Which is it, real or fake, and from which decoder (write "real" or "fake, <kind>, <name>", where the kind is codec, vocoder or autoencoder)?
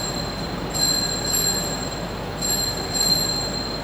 real